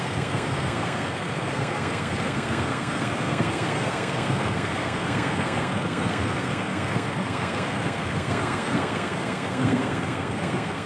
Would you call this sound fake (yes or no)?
yes